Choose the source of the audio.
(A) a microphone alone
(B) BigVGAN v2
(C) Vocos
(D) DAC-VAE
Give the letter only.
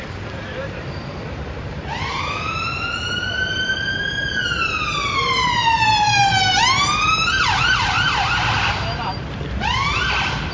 B